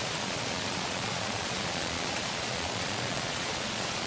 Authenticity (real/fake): fake